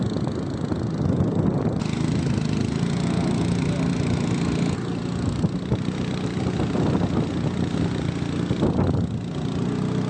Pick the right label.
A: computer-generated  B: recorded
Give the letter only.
B